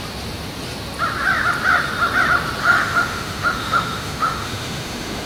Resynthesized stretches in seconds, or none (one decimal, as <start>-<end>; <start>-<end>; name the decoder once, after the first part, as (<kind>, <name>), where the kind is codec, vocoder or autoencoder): 2.6-5.3 (autoencoder, DAC-VAE)